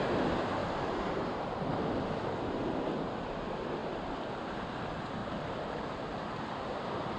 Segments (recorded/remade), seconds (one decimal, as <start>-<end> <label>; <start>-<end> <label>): 0.0-0.6 recorded; 0.6-1.7 remade; 1.7-3.8 recorded; 3.8-4.4 remade; 4.4-5.2 recorded; 5.2-6.7 remade; 6.7-7.2 recorded